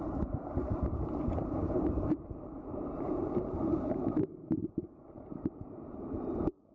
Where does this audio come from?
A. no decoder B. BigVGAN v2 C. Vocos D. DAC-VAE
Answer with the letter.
B